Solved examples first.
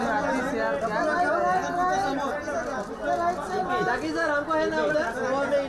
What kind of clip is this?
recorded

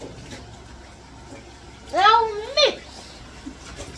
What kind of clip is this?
recorded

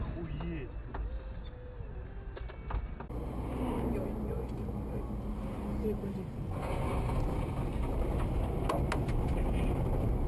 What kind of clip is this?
recorded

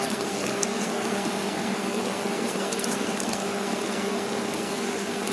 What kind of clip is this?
remade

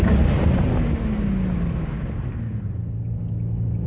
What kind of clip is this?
recorded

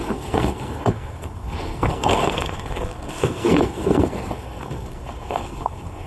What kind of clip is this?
remade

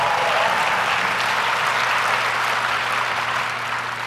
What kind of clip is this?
recorded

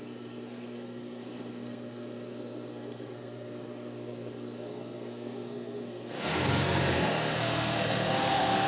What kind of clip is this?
remade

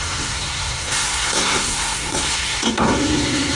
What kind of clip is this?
remade